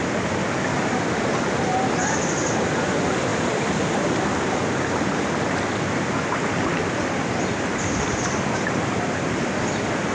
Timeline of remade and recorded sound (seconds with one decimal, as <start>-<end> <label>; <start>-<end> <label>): 0.0-10.1 recorded